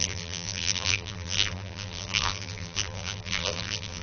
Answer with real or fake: fake